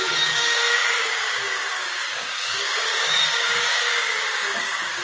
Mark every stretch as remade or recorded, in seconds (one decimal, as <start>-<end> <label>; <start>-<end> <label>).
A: 0.0-5.0 remade